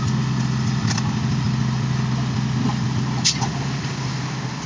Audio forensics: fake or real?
real